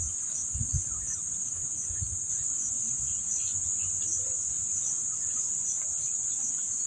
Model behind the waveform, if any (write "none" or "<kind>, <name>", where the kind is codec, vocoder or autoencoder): vocoder, Vocos